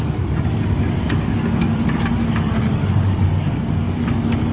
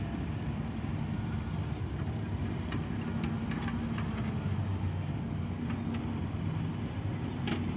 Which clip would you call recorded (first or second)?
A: second